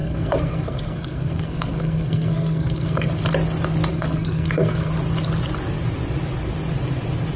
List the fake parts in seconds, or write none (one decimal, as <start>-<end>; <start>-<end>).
0.0-3.1; 3.9-4.9